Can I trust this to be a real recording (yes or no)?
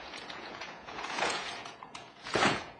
no